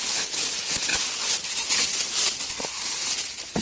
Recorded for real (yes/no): yes